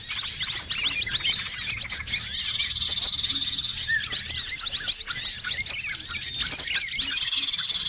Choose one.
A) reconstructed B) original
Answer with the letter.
B